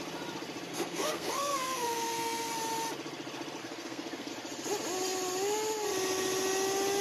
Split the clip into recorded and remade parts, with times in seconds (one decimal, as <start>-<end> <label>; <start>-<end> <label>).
0.0-0.7 recorded; 0.7-2.5 remade; 2.5-3.6 recorded; 3.6-4.3 remade; 4.3-7.0 recorded

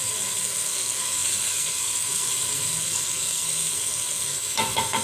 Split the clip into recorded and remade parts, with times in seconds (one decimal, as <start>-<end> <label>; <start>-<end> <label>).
0.0-5.0 remade

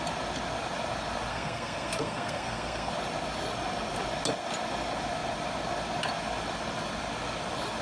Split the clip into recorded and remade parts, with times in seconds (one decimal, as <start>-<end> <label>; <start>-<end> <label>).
0.0-1.3 recorded; 1.3-2.9 remade; 2.9-7.8 recorded

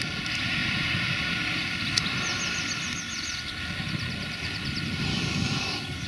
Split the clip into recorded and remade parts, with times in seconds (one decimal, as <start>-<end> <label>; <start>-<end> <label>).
0.0-5.1 recorded; 5.1-6.1 remade

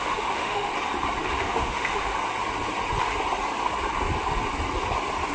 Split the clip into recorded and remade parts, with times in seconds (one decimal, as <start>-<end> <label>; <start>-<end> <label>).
0.0-0.7 remade; 0.7-1.4 recorded; 1.4-2.1 remade; 2.1-5.3 recorded

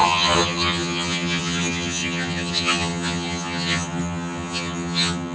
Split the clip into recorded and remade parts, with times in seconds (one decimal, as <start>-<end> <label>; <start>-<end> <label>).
0.0-5.3 remade